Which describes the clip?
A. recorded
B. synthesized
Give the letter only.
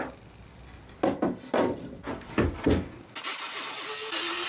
A